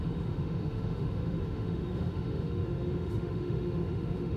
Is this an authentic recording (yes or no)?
no